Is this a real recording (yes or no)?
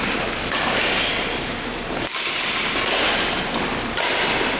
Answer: yes